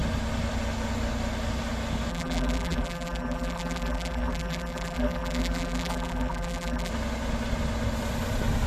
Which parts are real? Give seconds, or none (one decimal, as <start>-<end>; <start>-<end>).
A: 0.0-2.1; 6.9-8.7